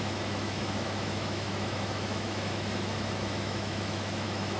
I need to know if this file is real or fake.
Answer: fake